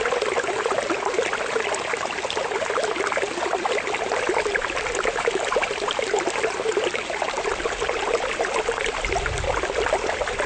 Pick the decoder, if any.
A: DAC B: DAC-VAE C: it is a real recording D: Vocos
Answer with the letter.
C